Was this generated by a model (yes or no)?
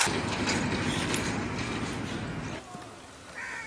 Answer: no